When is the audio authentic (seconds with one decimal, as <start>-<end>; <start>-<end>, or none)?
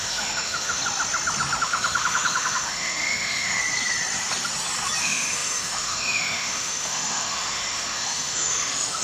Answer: 0.8-1.6; 3.6-5.0